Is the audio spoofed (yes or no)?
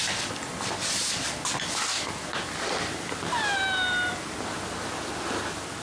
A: no